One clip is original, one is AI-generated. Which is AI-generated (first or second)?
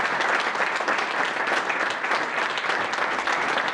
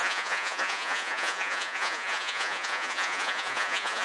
second